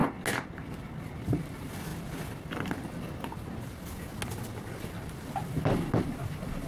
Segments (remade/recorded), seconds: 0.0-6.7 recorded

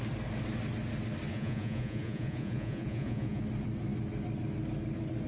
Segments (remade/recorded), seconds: 0.0-1.3 recorded; 1.3-3.4 remade; 3.4-5.3 recorded

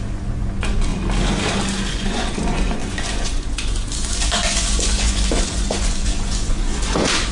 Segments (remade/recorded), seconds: 0.0-0.9 remade; 0.9-1.9 recorded; 1.9-7.3 remade